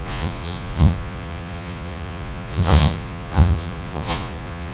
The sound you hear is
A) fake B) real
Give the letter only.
A